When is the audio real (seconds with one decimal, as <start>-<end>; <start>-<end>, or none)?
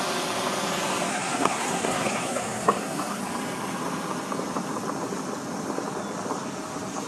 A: 0.0-1.1; 3.2-7.1